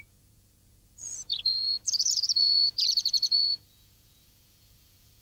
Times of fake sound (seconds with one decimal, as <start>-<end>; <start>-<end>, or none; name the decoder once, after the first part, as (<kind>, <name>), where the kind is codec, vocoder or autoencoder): 0.0-5.2 (vocoder, Vocos)